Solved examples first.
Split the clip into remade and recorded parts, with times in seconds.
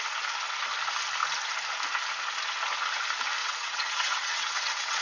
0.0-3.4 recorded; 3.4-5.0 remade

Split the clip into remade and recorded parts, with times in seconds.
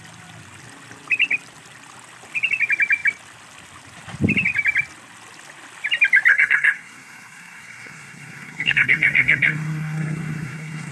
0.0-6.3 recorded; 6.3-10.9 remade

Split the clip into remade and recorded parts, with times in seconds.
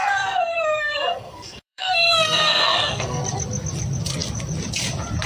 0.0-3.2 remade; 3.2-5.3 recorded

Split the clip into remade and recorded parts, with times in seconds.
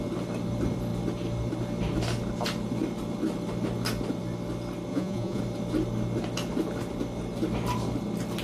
0.0-4.9 recorded; 4.9-5.4 remade; 5.4-8.4 recorded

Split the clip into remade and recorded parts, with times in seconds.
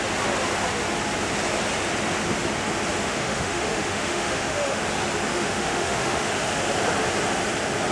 0.0-3.0 recorded; 3.0-4.8 remade; 4.8-5.3 recorded; 5.3-6.3 remade; 6.3-7.9 recorded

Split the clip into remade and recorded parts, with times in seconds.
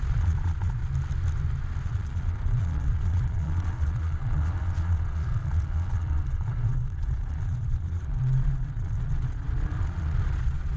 0.0-0.8 remade; 0.8-1.8 recorded; 1.8-10.8 remade